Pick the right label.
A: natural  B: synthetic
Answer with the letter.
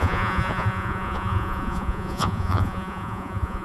B